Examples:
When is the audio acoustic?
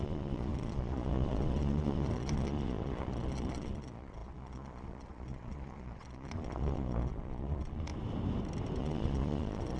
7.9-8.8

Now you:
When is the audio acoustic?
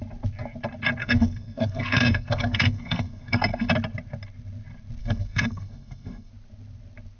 0.0-1.0; 3.7-5.0; 6.3-7.2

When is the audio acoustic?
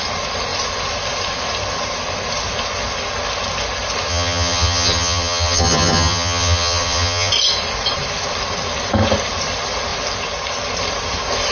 0.0-4.1; 7.3-11.5